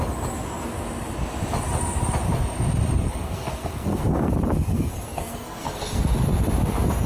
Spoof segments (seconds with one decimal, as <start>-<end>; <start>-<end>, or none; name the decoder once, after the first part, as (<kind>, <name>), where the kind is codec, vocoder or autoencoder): 3.0-4.3 (codec, SNAC); 4.7-6.0